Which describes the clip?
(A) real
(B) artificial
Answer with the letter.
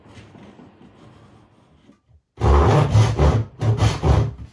A